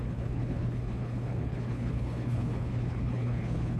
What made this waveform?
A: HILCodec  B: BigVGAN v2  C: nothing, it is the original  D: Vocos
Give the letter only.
A